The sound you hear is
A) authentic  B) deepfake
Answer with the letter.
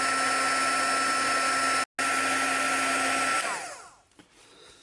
A